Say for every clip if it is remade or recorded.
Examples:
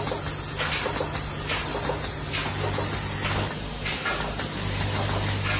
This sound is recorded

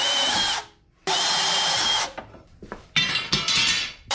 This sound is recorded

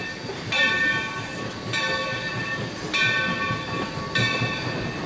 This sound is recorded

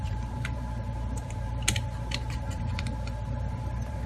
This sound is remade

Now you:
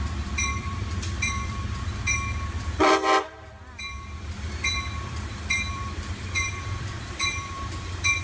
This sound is remade